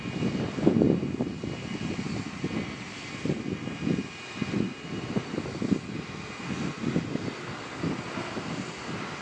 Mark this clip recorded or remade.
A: recorded